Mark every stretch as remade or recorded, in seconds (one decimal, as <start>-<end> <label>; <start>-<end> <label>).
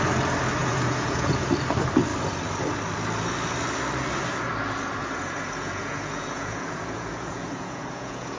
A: 0.0-0.6 recorded; 0.6-1.5 remade; 1.5-5.0 recorded; 5.0-8.4 remade